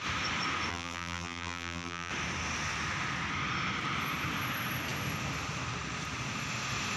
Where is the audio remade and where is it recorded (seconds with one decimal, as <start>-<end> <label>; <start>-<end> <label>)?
0.0-0.7 recorded; 0.7-2.1 remade; 2.1-7.0 recorded